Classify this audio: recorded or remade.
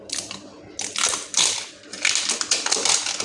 recorded